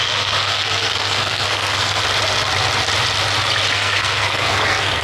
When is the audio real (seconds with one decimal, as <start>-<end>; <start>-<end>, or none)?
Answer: 2.0-3.7